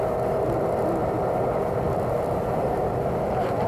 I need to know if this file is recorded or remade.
recorded